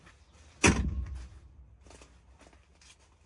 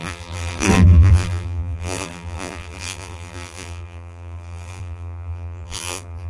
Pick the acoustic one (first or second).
first